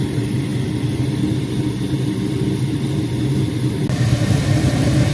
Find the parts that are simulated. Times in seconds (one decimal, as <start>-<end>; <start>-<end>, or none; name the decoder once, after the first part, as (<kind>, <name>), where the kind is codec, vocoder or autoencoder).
none